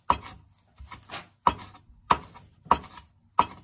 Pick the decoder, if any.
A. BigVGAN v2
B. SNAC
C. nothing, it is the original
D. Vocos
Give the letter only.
C